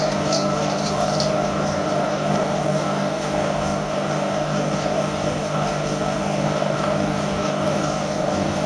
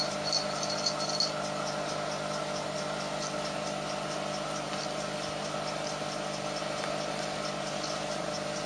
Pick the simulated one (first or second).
first